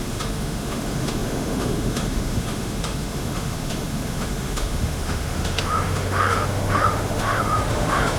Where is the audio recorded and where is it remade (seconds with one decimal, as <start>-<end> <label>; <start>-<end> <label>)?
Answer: 0.0-8.2 remade